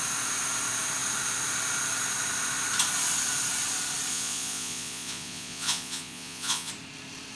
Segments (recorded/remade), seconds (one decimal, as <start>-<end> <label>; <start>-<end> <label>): 0.0-4.1 recorded; 4.1-6.7 remade; 6.7-7.4 recorded